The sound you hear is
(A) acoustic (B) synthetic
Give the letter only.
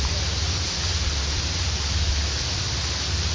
A